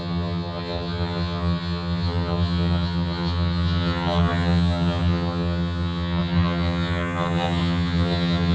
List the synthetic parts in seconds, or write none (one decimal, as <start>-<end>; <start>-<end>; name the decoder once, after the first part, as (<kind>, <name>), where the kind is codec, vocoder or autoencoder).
0.0-8.5 (vocoder, HiFi-GAN)